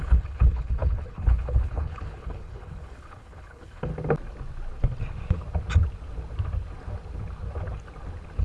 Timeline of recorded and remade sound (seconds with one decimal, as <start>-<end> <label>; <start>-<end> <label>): 0.0-3.9 remade; 3.9-8.4 recorded

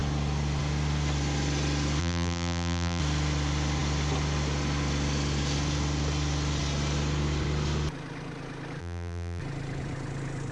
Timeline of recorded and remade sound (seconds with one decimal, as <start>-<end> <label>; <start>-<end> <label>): 0.0-2.0 recorded; 2.0-3.0 remade; 3.0-8.8 recorded; 8.8-9.4 remade; 9.4-10.5 recorded

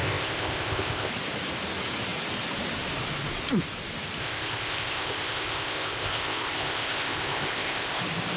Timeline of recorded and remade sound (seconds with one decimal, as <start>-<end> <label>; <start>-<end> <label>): 0.0-1.1 remade; 1.1-4.2 recorded; 4.2-8.0 remade; 8.0-8.4 recorded

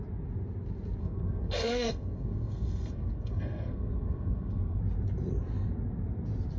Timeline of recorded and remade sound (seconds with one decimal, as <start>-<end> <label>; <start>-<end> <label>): 0.0-1.0 recorded; 1.0-4.8 remade; 4.8-6.6 recorded